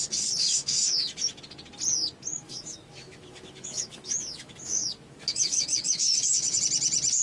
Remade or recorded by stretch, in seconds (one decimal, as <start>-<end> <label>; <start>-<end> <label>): 0.0-0.4 recorded; 0.4-1.4 remade; 1.4-2.3 recorded; 2.3-6.6 remade; 6.6-7.2 recorded